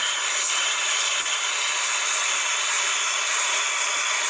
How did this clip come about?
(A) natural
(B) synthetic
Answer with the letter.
A